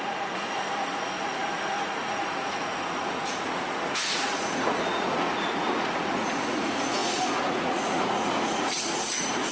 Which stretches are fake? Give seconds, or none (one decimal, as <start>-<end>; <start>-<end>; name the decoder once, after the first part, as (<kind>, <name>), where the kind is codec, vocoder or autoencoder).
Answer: 0.0-9.5 (vocoder, Vocos)